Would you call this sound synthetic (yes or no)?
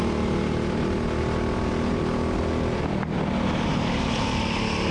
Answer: no